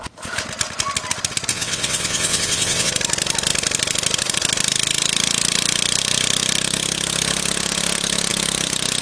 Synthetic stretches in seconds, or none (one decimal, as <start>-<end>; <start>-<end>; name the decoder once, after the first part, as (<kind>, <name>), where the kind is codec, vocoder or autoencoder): 1.5-2.9 (vocoder, WaveNeXt)

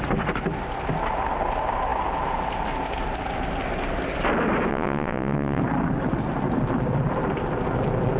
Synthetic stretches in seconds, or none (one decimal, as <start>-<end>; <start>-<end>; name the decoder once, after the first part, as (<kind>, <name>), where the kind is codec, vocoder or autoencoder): 4.7-5.6 (vocoder, WaveNeXt)

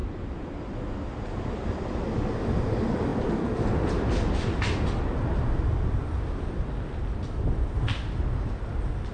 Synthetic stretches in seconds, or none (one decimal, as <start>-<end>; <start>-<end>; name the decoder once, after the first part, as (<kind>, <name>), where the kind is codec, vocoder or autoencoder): none

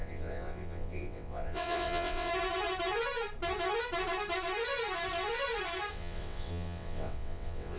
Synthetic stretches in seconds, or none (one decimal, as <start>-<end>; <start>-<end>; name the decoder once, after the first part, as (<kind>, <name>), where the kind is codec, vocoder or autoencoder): 0.0-2.3 (vocoder, WaveNeXt); 5.9-7.8